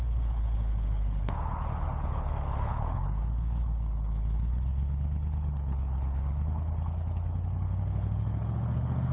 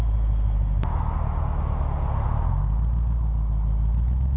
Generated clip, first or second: first